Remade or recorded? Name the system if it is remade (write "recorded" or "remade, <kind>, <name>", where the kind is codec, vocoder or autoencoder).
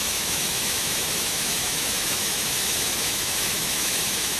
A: remade, autoencoder, DAC-VAE